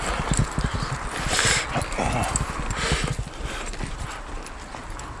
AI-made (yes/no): no